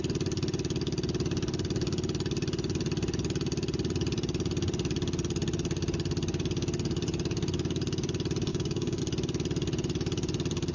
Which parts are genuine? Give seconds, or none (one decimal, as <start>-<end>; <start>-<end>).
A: 0.0-8.5; 9.0-10.7